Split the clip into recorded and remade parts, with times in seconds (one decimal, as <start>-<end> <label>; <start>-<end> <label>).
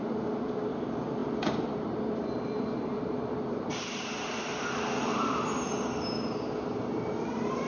0.0-5.1 remade; 5.1-6.7 recorded; 6.7-7.7 remade